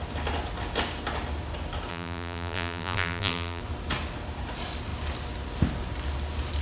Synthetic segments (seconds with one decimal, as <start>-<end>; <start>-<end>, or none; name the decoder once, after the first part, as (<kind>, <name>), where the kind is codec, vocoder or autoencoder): 1.9-3.6 (vocoder, BigVGAN v2)